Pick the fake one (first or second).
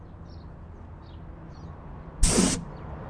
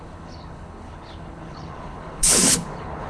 second